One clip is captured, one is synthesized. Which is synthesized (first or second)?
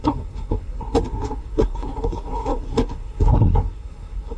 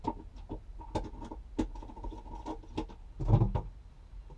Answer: first